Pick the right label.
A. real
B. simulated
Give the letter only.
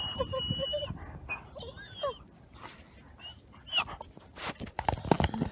A